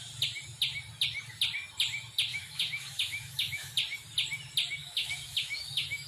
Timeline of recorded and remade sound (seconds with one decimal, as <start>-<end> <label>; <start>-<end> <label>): 0.0-2.3 recorded; 2.3-3.7 remade; 3.7-4.8 recorded; 4.8-6.1 remade